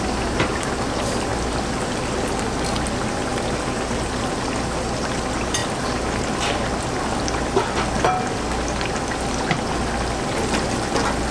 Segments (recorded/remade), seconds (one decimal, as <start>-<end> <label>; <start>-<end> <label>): 0.0-11.3 recorded